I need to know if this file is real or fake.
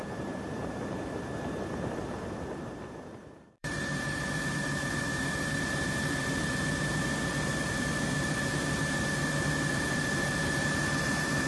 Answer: fake